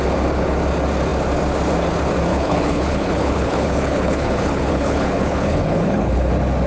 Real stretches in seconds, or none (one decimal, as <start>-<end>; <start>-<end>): 0.0-2.3; 6.3-6.7